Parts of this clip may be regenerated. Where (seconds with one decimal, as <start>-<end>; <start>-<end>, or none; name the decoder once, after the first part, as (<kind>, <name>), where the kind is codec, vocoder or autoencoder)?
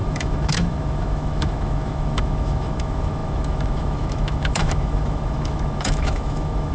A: 0.0-6.7 (autoencoder, DAC-VAE)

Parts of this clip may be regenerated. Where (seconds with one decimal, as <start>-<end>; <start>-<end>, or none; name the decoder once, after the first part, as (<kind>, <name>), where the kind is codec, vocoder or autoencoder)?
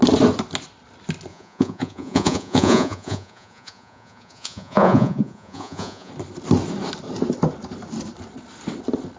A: 1.3-6.1 (vocoder, Vocos)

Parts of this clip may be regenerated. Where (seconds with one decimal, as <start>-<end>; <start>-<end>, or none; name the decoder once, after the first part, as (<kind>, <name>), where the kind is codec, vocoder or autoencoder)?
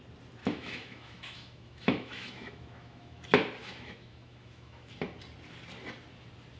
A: 0.4-3.2 (autoencoder, DAC-VAE); 3.6-4.9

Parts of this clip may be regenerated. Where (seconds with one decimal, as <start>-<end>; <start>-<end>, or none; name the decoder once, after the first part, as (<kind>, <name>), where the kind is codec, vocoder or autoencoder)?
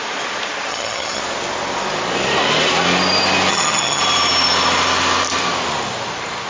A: 0.7-1.2 (vocoder, HiFi-GAN); 3.5-4.0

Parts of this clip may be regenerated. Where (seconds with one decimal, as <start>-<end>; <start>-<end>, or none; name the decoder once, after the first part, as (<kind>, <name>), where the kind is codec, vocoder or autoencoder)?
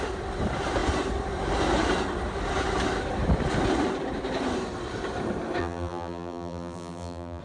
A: 5.6-7.4 (vocoder, BigVGAN v2)